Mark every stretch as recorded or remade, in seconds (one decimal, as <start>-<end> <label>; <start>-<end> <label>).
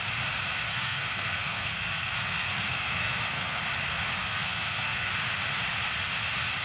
0.0-0.7 recorded; 0.7-3.6 remade; 3.6-4.2 recorded; 4.2-5.1 remade; 5.1-6.6 recorded